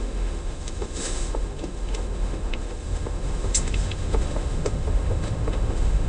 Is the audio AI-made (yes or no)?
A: yes